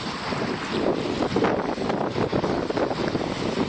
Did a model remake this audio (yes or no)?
no